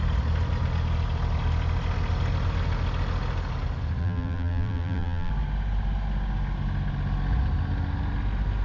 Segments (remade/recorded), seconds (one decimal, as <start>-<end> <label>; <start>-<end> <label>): 0.0-4.0 recorded; 4.0-5.3 remade; 5.3-8.6 recorded